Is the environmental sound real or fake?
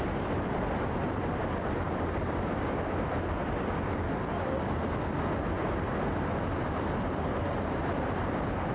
real